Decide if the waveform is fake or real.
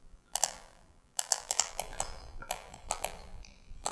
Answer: fake